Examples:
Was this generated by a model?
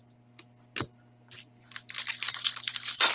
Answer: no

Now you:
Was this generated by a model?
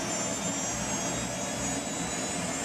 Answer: no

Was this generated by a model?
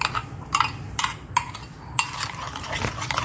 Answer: yes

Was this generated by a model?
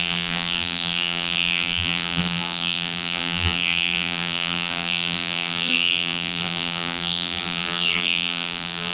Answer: yes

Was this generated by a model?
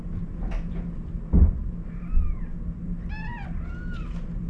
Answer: no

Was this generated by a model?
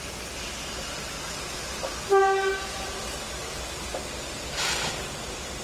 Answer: no